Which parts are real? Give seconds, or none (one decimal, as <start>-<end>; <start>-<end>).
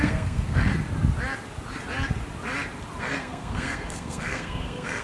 0.7-3.0